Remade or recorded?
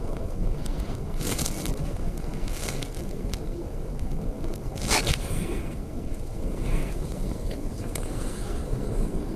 remade